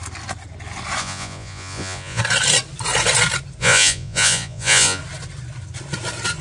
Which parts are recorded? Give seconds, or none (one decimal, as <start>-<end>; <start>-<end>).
0.0-1.0; 2.2-3.6; 5.0-6.4